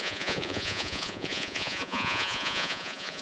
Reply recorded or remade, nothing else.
remade